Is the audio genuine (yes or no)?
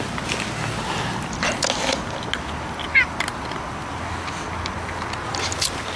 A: yes